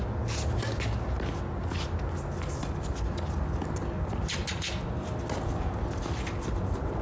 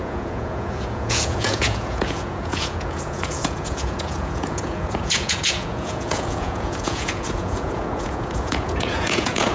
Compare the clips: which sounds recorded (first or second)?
first